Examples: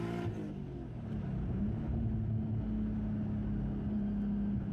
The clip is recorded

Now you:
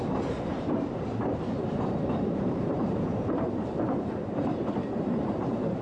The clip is remade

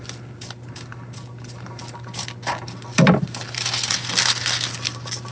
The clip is recorded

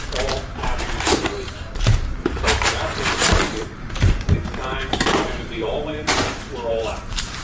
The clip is remade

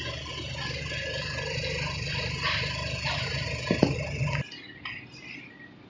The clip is recorded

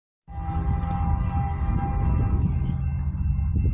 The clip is recorded